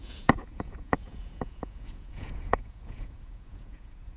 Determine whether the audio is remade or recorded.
remade